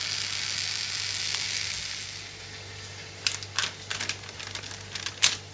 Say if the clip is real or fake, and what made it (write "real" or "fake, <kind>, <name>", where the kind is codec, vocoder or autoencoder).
real